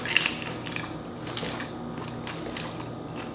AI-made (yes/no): no